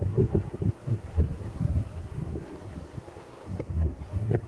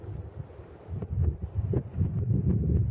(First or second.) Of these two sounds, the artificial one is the first